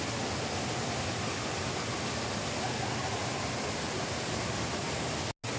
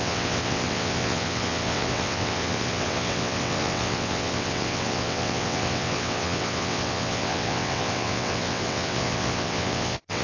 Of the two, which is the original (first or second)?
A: first